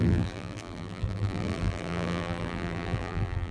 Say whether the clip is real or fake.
fake